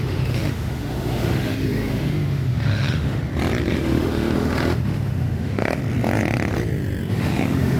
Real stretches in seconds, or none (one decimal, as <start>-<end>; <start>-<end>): 3.2-3.7; 5.8-7.1